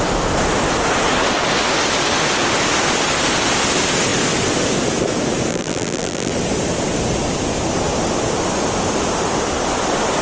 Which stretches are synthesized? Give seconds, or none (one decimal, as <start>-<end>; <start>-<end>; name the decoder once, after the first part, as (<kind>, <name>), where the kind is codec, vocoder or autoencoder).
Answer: 5.5-6.3 (vocoder, BigVGAN v2)